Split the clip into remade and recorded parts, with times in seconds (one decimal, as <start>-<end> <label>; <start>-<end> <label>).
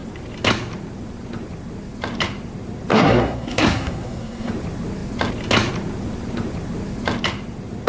0.0-2.9 recorded; 2.9-4.5 remade; 4.5-7.9 recorded